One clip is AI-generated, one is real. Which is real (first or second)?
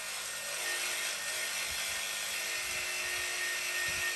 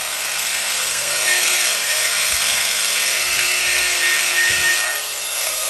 first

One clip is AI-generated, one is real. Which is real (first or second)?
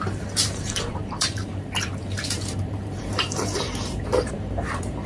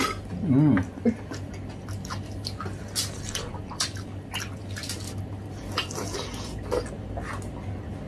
second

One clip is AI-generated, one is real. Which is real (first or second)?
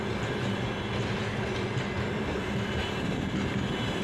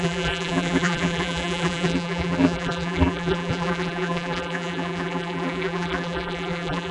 first